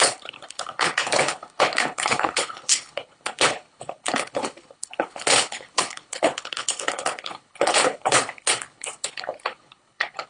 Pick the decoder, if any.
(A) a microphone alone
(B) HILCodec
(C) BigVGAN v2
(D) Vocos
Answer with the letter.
B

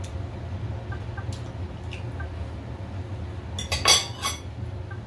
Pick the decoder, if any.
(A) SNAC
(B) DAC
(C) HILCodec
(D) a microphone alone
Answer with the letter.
D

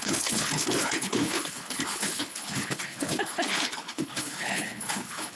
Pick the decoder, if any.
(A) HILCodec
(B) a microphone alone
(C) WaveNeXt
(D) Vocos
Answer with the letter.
A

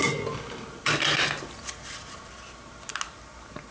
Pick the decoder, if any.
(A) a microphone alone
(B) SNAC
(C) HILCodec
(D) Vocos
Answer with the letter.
A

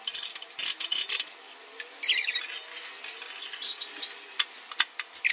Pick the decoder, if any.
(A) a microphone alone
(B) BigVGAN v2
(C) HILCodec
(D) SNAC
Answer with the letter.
A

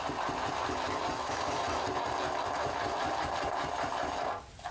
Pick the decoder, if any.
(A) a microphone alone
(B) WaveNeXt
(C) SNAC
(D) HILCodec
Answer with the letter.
A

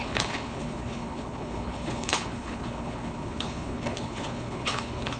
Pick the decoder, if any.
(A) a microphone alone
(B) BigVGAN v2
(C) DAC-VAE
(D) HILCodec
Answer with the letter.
D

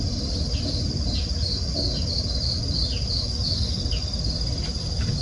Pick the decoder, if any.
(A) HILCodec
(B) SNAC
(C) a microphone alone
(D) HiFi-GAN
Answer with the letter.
C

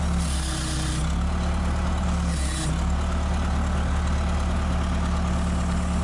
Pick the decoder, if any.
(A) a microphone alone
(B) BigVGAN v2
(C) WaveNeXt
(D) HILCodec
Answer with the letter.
A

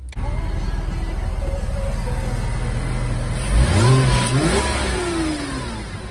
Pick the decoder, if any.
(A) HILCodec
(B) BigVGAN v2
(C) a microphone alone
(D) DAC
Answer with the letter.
C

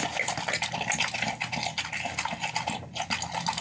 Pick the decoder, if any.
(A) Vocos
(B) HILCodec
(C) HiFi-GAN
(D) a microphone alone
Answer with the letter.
D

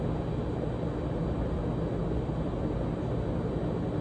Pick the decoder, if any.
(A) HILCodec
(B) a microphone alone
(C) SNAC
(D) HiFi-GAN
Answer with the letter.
B